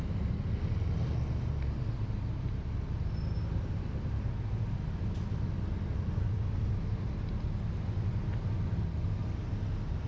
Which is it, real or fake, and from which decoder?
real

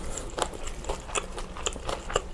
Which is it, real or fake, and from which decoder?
real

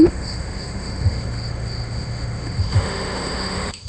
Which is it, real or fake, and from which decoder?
fake, autoencoder, DAC-VAE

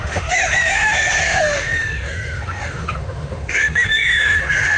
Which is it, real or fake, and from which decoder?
fake, autoencoder, DAC-VAE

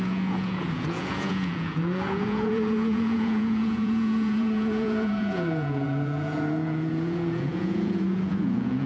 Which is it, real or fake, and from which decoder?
fake, vocoder, Vocos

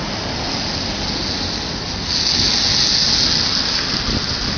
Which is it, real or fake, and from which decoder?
real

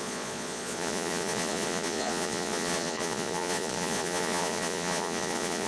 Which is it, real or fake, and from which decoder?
fake, vocoder, Vocos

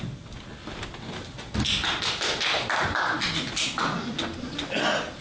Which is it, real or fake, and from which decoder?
real